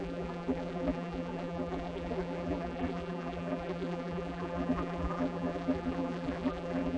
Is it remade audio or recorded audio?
remade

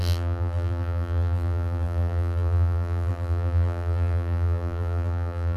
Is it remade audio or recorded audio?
remade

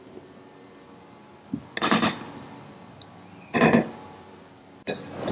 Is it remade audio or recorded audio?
recorded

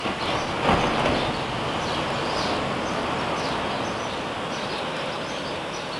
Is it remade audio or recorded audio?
recorded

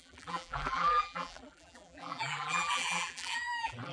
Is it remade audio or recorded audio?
remade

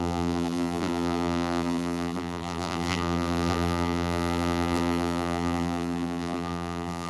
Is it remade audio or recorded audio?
remade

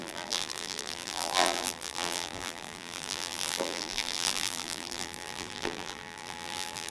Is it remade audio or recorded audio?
remade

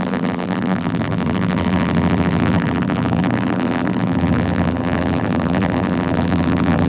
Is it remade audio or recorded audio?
remade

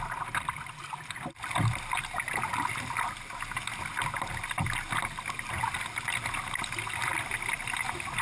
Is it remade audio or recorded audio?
recorded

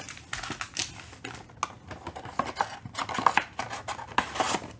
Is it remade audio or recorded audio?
recorded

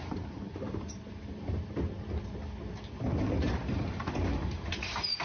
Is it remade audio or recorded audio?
recorded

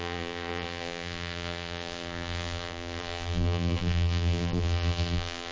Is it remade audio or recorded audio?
remade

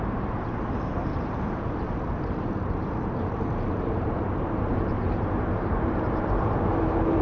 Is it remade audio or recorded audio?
remade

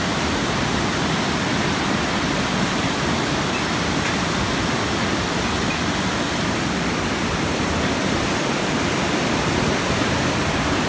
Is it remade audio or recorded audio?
remade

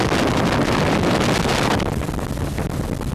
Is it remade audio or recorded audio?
recorded